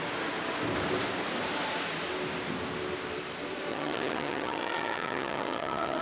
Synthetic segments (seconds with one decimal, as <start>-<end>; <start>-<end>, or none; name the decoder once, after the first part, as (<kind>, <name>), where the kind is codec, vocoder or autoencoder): 3.7-6.0 (vocoder, HiFi-GAN)